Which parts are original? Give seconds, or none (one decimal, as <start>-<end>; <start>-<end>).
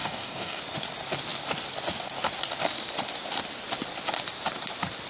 0.6-5.1